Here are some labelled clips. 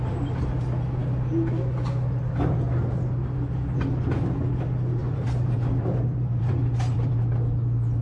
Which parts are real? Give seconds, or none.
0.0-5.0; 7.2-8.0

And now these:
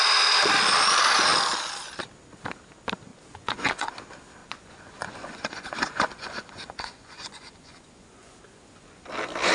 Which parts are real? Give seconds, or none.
0.0-3.1; 3.9-4.4; 9.0-9.5

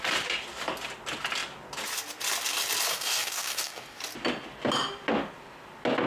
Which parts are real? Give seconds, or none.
0.0-2.9; 4.0-6.1

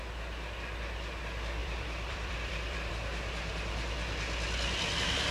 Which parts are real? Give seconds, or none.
0.0-1.6; 2.9-5.3

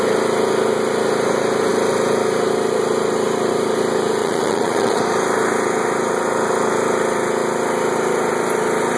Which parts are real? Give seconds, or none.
0.0-4.2; 5.0-9.0